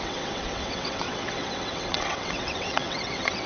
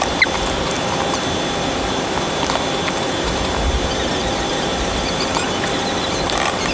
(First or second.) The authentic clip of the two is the second